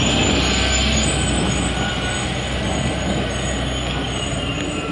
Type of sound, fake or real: real